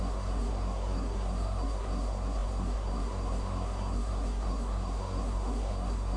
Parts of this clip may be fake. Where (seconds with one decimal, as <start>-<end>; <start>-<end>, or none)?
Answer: 0.0-6.2